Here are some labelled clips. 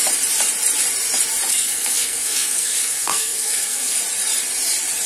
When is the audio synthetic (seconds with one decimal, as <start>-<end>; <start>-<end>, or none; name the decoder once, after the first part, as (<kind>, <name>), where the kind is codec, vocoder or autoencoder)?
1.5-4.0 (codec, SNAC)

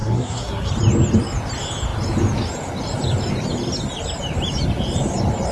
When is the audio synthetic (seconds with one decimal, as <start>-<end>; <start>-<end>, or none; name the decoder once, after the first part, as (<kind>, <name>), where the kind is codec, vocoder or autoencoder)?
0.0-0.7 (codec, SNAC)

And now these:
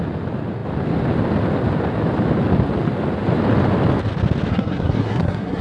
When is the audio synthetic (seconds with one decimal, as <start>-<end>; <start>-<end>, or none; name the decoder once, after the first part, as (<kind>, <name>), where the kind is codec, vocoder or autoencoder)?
4.5-5.6 (codec, SNAC)